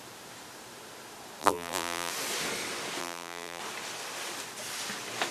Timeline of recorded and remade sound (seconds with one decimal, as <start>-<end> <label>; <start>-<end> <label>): 0.0-1.4 recorded; 1.4-2.1 remade; 2.1-3.0 recorded; 3.0-3.6 remade; 3.6-5.3 recorded